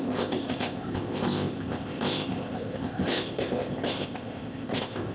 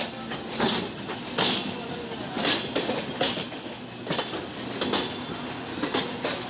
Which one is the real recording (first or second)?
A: second